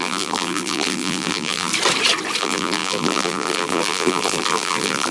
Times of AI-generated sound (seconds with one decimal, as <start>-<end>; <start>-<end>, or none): 0.0-1.7; 2.4-5.1